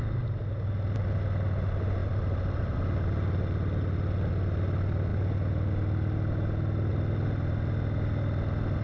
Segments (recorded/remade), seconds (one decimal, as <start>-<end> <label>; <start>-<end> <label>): 0.0-8.8 recorded